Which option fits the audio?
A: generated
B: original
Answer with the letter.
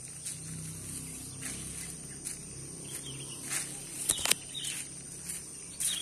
B